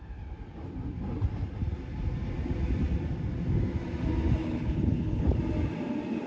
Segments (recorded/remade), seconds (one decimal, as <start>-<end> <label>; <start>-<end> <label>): 0.0-4.4 recorded; 4.4-5.4 remade; 5.4-6.3 recorded